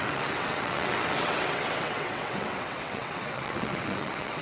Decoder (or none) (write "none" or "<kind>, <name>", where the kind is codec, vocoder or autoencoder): vocoder, WaveNeXt